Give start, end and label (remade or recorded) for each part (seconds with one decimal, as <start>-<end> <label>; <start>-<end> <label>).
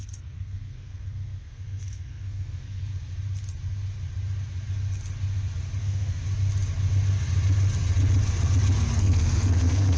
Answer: 0.0-2.8 remade; 2.8-5.8 recorded; 5.8-6.2 remade; 6.2-9.0 recorded; 9.0-10.0 remade